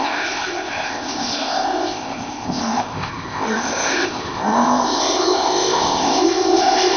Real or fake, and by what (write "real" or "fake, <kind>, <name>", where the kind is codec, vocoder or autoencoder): fake, codec, ZipCodec